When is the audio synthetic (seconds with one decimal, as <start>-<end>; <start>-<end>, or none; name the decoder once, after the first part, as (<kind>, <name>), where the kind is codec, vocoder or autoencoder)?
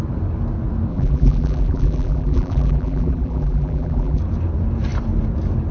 0.9-4.2 (vocoder, BigVGAN v2)